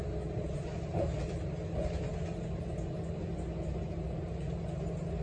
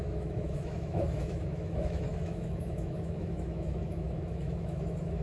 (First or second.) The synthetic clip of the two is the second